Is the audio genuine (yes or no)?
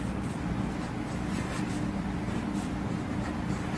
yes